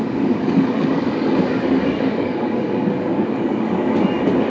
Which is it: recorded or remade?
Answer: remade